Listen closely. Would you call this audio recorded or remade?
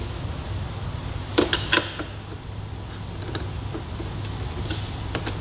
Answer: recorded